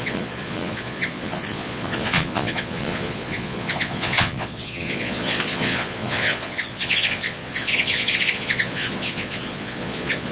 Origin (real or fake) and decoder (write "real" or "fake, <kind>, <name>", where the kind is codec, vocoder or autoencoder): fake, vocoder, Vocos